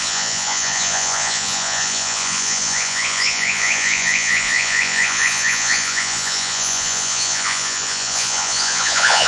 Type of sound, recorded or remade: remade